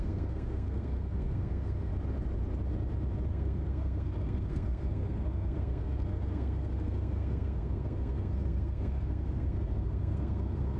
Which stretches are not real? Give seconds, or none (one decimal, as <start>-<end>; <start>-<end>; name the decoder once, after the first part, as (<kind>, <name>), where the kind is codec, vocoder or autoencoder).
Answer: 0.0-1.9 (codec, SNAC); 3.3-10.8